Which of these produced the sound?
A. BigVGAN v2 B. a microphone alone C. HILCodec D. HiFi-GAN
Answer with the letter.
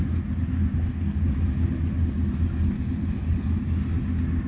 B